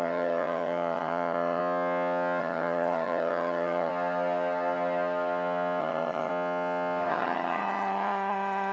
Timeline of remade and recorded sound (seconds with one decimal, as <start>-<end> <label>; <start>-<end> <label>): 0.0-1.6 remade; 1.6-2.4 recorded; 2.4-3.9 remade; 3.9-5.8 recorded; 5.8-6.3 remade; 6.3-7.1 recorded; 7.1-8.7 remade